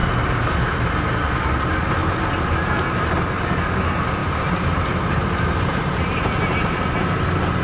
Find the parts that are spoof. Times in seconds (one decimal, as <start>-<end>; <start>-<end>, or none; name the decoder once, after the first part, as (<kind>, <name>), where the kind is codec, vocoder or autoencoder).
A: 4.2-6.8 (vocoder, BigVGAN v2)